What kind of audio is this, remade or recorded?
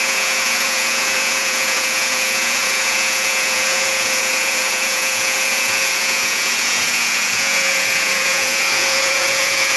remade